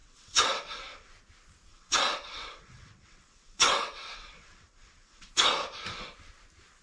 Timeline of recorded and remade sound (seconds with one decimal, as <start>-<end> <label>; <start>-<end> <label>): 0.0-1.1 remade; 1.1-1.7 recorded; 1.7-5.3 remade; 5.3-6.8 recorded